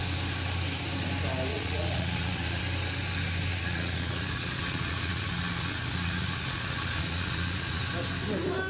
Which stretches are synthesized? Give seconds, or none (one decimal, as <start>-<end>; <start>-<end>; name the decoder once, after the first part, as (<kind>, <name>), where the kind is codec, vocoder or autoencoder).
1.5-2.6 (vocoder, Vocos); 3.5-7.8